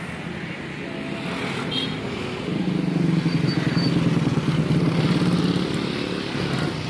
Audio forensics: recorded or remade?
recorded